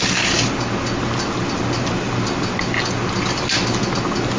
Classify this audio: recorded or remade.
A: recorded